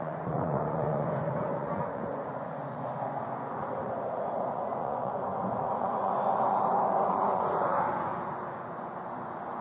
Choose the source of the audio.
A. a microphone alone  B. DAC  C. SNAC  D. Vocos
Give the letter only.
D